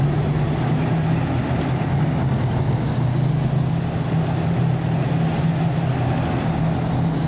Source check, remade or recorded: recorded